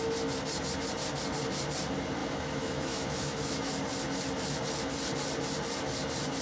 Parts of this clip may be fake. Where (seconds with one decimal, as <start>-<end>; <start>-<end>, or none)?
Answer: 2.2-3.7